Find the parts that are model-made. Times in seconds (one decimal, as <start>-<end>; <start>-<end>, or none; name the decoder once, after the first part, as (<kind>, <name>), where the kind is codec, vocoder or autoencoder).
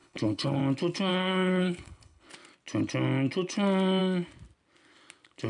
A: 0.0-0.6 (codec, HILCodec); 1.1-2.3